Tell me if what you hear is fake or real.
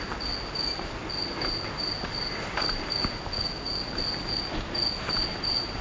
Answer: real